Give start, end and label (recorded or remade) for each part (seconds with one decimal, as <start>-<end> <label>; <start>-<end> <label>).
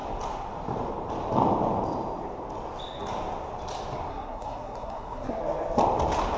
0.0-4.1 recorded; 4.1-5.4 remade; 5.4-6.4 recorded